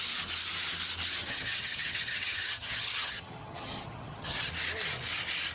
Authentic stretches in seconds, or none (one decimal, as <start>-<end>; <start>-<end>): 0.0-1.2; 4.5-5.5